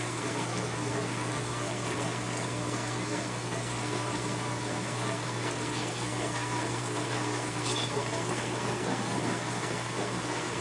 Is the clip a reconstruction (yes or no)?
yes